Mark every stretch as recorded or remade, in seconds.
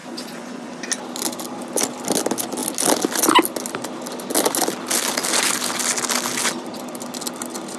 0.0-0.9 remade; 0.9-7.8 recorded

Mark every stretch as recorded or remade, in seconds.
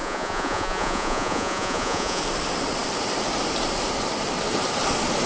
0.0-2.2 remade; 2.2-5.3 recorded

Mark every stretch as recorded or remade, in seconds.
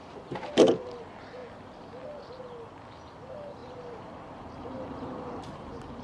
0.0-1.0 remade; 1.0-3.6 recorded; 3.6-5.4 remade; 5.4-6.0 recorded